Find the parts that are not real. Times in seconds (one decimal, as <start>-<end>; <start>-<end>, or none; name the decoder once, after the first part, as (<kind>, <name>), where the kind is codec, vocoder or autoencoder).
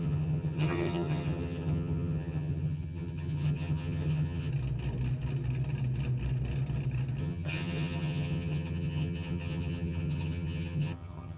0.0-4.5 (vocoder, HiFi-GAN); 7.2-11.4